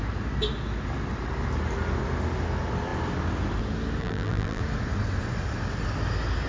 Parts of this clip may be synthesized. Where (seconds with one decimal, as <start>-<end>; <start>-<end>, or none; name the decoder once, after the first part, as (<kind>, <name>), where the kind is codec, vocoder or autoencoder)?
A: 4.0-4.6 (vocoder, BigVGAN v2)